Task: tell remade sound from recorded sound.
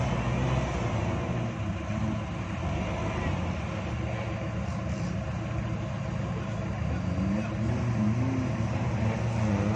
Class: recorded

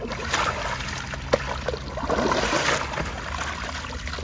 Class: recorded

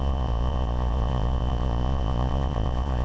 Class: remade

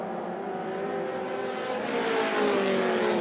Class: recorded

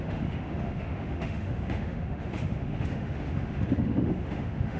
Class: remade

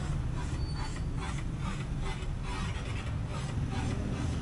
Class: recorded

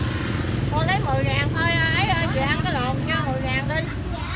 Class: recorded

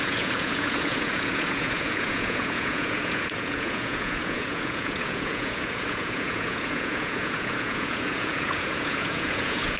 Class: remade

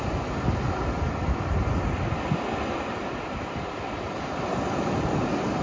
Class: recorded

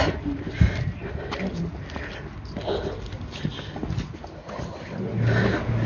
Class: recorded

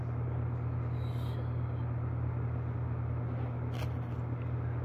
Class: recorded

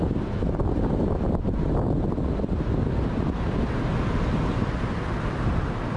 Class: recorded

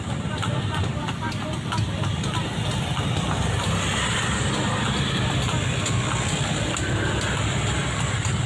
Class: recorded